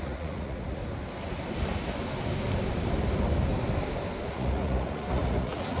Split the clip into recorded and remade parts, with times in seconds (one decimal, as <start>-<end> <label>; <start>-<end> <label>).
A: 0.0-0.8 remade; 0.8-4.3 recorded; 4.3-5.8 remade